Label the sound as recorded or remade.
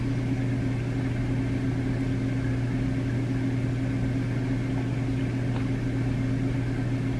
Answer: recorded